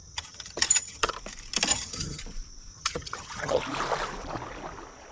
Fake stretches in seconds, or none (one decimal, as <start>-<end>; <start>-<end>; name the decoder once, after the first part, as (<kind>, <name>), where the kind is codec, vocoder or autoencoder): 0.0-1.1 (vocoder, HiFi-GAN); 1.7-2.2; 2.7-3.6